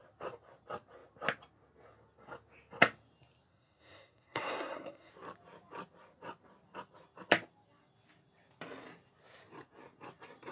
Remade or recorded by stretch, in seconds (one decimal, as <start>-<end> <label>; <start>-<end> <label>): 0.0-3.5 recorded; 3.5-5.1 remade; 5.1-10.5 recorded